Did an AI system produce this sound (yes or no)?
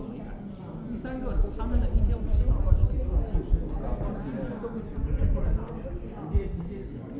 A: no